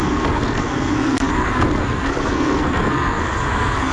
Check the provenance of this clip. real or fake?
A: fake